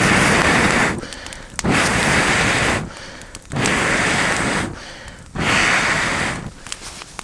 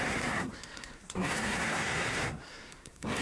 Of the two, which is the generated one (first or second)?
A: second